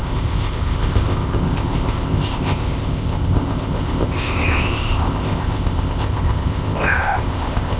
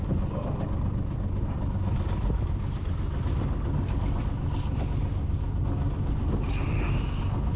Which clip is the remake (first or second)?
first